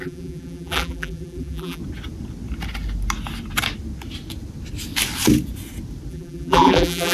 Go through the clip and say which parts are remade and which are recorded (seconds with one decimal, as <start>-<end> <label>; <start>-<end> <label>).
0.0-1.8 remade; 1.8-6.1 recorded; 6.1-7.1 remade